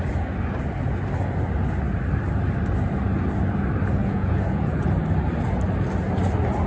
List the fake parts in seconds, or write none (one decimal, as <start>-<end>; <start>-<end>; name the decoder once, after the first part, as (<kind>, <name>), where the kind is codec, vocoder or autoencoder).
4.0-4.9 (vocoder, Vocos)